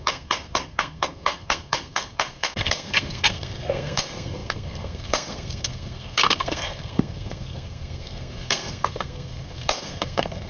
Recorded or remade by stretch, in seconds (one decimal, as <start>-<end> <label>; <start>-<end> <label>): 0.0-10.5 remade